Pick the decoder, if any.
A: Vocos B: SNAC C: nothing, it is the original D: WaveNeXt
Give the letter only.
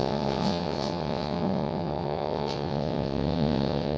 D